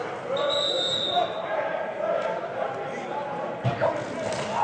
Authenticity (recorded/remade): recorded